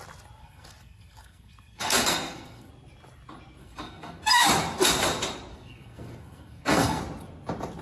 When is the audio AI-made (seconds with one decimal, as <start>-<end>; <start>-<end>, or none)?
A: 0.4-2.7; 3.6-4.2; 5.5-7.0